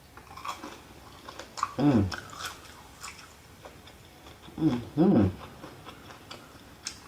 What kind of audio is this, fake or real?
real